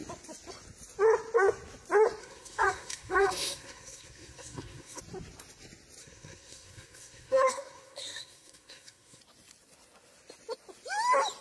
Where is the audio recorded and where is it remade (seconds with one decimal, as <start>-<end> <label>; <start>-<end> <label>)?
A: 0.0-2.2 recorded; 2.2-5.0 remade; 5.0-6.0 recorded; 6.0-9.2 remade; 9.2-11.4 recorded